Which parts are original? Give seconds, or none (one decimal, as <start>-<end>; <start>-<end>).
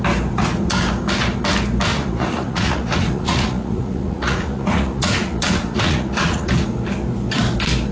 0.0-1.9; 6.5-7.9